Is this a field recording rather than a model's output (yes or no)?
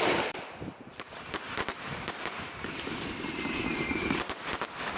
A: no